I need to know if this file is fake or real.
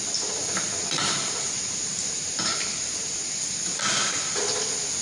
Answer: real